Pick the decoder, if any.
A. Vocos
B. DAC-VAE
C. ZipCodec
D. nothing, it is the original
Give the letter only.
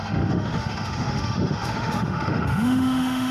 B